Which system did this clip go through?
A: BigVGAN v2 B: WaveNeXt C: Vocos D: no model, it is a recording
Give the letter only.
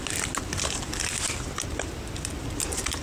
D